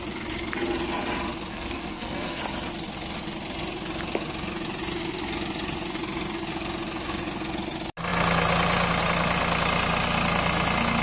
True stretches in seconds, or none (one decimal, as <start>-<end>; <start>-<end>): 0.0-1.5; 2.4-11.0